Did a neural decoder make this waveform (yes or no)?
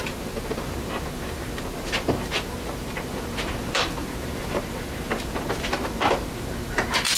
yes